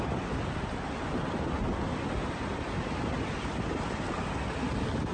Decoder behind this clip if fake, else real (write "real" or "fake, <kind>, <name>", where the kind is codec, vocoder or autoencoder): real